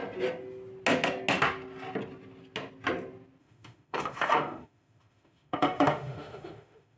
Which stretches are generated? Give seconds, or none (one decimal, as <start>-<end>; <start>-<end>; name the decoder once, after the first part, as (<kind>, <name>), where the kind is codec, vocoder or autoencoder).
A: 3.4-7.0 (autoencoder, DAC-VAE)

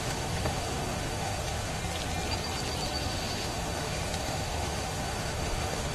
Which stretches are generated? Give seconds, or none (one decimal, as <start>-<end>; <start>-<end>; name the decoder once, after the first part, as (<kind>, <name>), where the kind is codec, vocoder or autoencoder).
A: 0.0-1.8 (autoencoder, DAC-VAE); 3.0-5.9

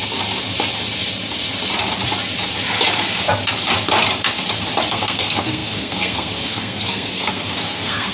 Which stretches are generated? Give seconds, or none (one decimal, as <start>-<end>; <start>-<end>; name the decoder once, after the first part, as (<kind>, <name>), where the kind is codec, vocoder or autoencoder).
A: 4.9-8.1 (codec, SNAC)